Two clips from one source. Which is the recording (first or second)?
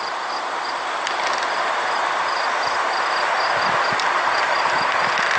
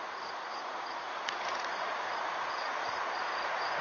first